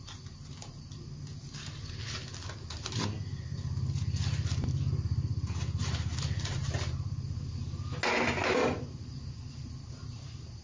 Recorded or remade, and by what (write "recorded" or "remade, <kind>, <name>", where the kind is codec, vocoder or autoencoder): recorded